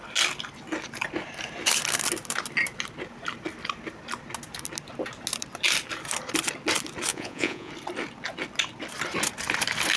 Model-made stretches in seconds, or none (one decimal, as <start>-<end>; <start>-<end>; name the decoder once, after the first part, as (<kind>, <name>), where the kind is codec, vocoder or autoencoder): 7.1-7.7 (vocoder, Vocos)